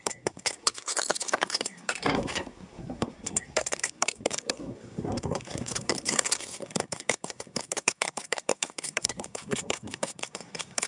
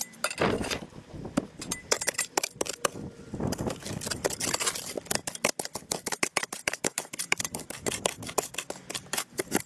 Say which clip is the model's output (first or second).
first